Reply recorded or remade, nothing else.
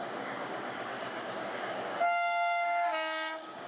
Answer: remade